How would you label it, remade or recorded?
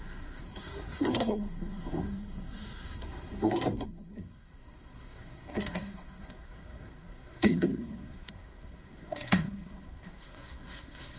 remade